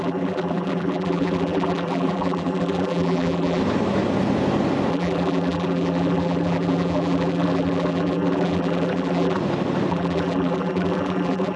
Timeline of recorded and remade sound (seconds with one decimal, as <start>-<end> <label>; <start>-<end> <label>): 0.0-3.6 remade; 3.6-4.9 recorded; 4.9-9.4 remade; 9.4-9.9 recorded; 9.9-11.6 remade